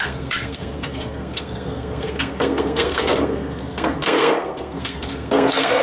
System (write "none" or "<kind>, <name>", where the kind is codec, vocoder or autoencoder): codec, SNAC